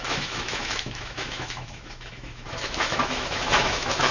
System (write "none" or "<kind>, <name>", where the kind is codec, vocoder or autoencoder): autoencoder, DAC-VAE